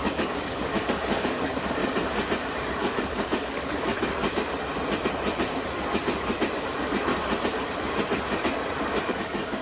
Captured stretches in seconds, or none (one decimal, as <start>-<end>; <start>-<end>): 1.8-2.6; 3.9-6.6; 7.1-8.8

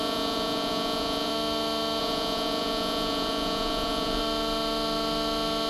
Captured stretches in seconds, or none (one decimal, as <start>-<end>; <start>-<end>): 1.3-2.0; 4.2-5.7

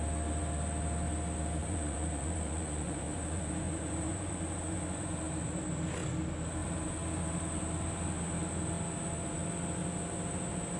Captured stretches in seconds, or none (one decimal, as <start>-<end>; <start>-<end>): 0.0-1.6; 5.1-10.8

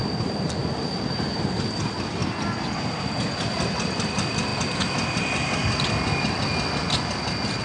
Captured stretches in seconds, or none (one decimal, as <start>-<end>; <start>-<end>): 0.0-1.1; 2.2-2.8; 4.5-7.6

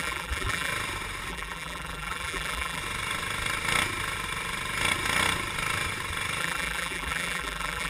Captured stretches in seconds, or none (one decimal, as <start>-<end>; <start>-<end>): 0.7-1.3; 2.8-6.4

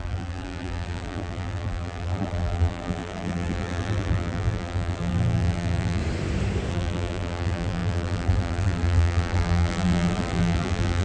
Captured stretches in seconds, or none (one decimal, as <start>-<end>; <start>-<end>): 6.0-6.7

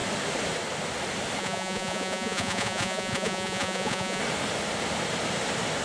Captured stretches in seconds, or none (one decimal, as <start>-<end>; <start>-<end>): 0.0-1.4; 4.2-5.8

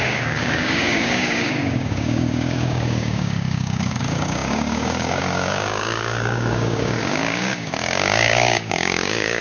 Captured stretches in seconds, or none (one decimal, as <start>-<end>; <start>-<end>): none